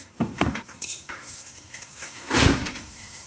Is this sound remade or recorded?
remade